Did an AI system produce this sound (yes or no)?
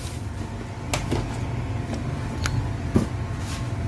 no